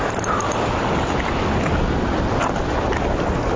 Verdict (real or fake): real